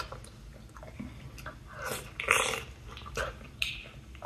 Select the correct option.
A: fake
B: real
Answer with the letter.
B